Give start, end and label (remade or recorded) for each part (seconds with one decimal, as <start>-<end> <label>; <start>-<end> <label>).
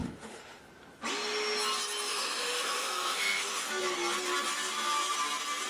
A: 0.0-0.6 remade; 0.6-2.1 recorded; 2.1-3.7 remade; 3.7-5.7 recorded